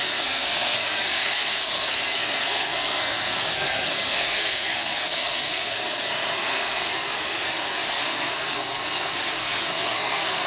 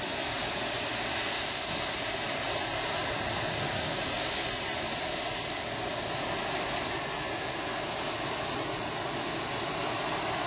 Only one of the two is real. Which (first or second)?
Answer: second